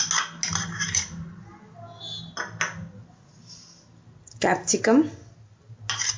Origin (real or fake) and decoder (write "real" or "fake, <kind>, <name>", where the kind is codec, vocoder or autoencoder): real